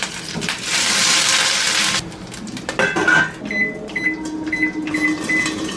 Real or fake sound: real